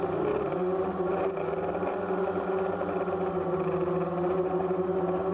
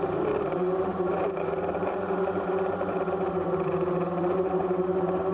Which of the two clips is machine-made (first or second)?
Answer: second